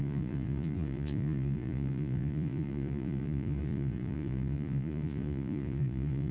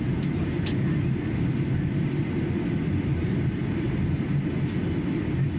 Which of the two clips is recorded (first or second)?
second